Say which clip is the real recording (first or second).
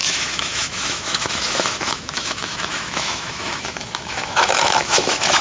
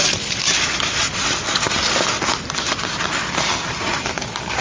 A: second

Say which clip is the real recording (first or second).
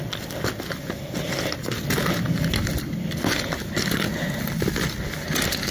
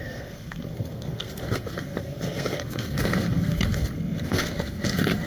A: first